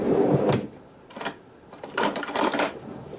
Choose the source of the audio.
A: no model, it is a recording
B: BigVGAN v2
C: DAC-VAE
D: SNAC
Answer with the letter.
B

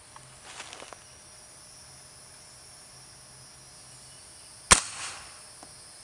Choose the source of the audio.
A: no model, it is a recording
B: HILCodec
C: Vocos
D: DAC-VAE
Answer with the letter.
A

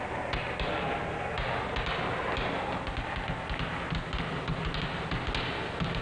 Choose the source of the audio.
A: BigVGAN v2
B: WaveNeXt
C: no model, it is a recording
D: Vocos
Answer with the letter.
C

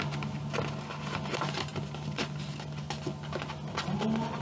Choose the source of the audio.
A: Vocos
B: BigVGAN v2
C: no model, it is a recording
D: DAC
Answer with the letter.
C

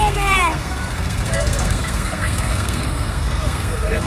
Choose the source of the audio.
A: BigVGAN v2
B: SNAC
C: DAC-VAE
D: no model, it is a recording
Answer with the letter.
B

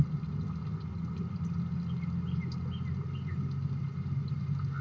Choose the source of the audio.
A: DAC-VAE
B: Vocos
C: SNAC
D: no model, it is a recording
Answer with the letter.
D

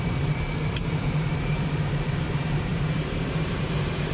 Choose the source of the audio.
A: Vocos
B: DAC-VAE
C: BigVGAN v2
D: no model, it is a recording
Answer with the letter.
C